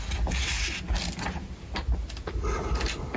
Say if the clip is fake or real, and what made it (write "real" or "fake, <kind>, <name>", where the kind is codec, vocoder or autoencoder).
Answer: real